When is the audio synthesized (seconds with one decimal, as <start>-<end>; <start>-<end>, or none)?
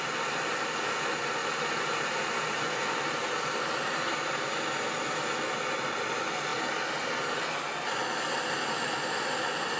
none